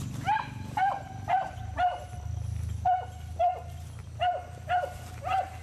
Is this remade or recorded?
recorded